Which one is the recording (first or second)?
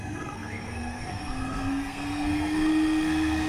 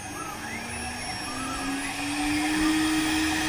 second